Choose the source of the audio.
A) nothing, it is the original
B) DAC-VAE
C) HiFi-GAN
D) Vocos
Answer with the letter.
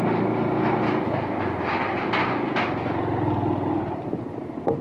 A